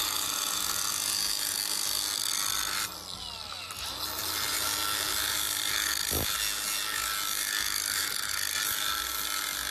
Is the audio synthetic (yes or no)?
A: no